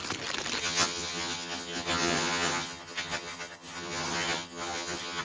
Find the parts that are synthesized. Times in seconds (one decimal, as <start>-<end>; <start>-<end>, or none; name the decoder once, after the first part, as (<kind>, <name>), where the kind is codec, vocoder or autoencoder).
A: 0.6-5.2 (vocoder, HiFi-GAN)